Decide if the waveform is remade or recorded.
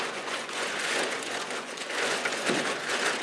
remade